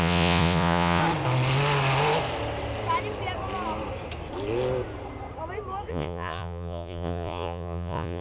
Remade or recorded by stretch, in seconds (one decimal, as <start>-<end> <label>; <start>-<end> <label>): 0.0-1.0 remade; 1.0-5.9 recorded; 5.9-8.2 remade